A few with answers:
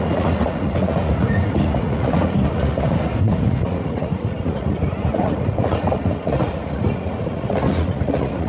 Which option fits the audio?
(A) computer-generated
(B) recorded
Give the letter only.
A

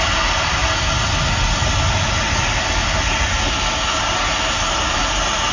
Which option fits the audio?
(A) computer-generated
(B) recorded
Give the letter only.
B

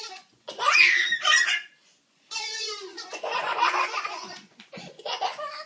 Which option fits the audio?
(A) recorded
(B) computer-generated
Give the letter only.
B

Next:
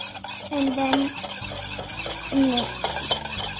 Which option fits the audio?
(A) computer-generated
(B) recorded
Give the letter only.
B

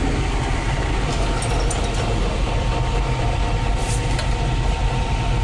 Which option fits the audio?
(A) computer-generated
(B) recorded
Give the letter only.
B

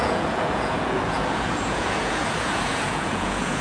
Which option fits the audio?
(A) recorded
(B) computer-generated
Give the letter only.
B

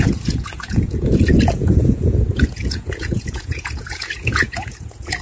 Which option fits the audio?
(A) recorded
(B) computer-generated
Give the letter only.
B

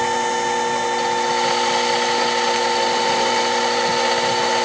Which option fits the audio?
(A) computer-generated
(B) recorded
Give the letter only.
B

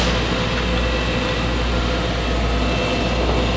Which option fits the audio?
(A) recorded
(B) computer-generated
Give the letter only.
A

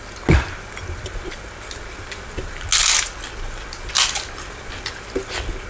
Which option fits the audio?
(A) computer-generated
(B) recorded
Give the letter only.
B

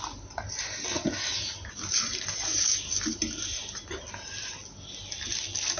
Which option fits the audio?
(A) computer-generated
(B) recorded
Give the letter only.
B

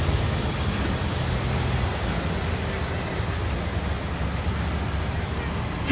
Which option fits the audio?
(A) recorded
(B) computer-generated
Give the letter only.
A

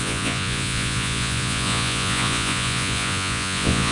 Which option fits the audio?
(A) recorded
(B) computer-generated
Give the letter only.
B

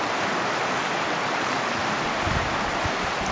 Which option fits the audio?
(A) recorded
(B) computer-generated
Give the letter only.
A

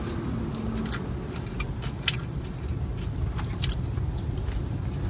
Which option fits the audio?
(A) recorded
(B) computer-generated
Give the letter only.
A